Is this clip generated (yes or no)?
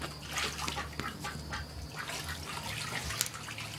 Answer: no